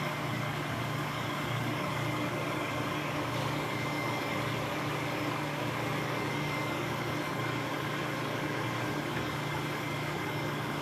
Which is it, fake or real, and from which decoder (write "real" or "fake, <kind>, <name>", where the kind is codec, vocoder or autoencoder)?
fake, codec, DAC